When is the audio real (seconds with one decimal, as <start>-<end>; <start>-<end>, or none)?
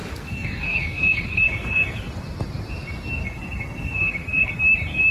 2.1-3.2; 4.5-5.1